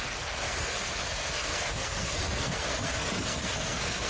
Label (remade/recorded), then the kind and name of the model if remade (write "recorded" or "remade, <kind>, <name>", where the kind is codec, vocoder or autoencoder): remade, codec, SNAC